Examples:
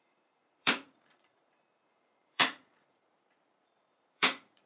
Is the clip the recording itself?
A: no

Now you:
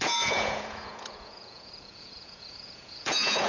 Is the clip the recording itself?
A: no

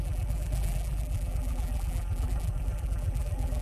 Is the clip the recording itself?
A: no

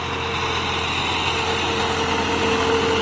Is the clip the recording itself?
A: yes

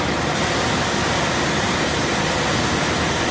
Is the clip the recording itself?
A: yes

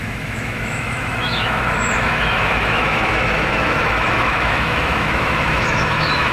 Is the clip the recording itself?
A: no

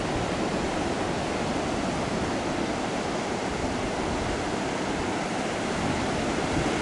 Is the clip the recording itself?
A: yes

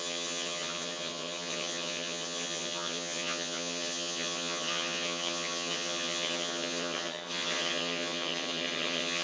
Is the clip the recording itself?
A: no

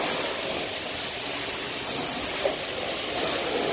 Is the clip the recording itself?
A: yes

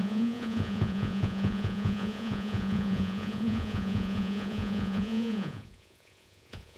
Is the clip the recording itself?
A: no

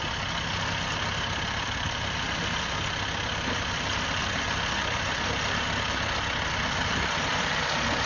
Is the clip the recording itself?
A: yes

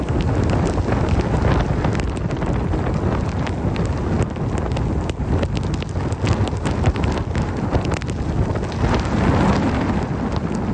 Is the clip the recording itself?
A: yes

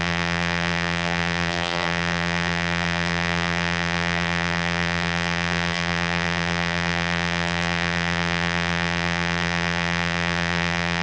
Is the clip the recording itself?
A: no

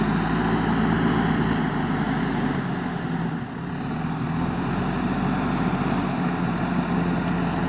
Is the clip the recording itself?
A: yes